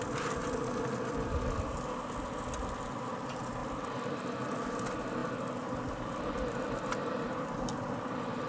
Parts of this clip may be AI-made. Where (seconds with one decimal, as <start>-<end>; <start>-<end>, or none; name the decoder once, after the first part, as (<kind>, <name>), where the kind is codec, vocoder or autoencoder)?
none

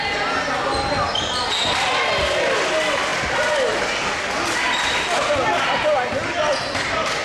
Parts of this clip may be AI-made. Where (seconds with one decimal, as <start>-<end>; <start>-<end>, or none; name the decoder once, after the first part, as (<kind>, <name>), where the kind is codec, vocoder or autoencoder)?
none

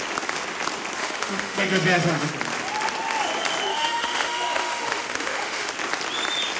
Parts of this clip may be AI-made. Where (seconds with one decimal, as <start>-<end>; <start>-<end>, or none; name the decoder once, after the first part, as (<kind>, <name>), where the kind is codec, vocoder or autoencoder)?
1.0-2.3 (autoencoder, DAC-VAE); 3.7-5.7

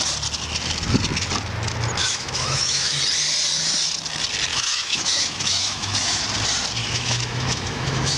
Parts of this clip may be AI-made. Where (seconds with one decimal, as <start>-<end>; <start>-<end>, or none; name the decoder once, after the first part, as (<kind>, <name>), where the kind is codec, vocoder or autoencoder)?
2.0-3.0 (autoencoder, DAC-VAE); 4.5-6.2; 6.8-8.2

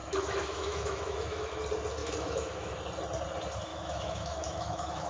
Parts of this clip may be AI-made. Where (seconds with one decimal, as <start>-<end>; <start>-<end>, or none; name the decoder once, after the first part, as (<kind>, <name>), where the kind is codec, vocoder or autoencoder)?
0.0-1.6 (autoencoder, DAC-VAE); 2.0-2.8; 3.7-5.1

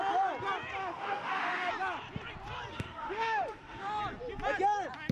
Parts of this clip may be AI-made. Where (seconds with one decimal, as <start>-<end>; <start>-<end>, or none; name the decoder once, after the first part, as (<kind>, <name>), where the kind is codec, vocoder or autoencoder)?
0.8-1.7 (autoencoder, DAC-VAE); 2.7-4.0

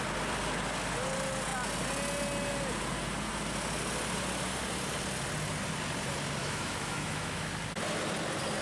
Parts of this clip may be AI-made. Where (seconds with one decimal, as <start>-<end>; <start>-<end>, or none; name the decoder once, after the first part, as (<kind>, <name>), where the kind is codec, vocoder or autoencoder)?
6.4-7.5 (autoencoder, DAC-VAE)